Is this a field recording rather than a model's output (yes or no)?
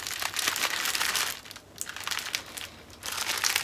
yes